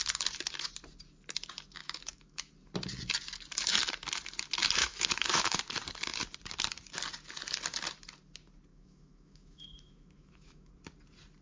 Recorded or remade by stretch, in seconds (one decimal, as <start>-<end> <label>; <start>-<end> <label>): 0.0-1.8 recorded; 1.8-2.5 remade; 2.5-4.8 recorded; 4.8-5.6 remade; 5.6-8.7 recorded; 8.7-10.7 remade; 10.7-11.4 recorded